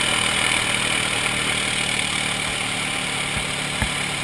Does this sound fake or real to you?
real